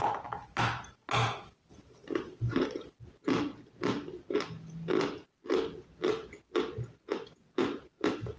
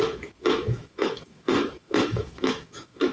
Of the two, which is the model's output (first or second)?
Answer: second